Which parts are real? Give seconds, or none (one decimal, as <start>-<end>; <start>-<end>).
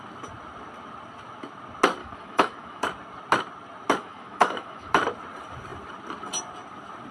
0.0-2.0; 2.8-4.0; 4.9-7.1